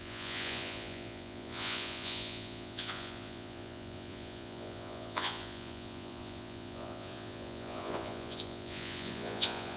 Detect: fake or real fake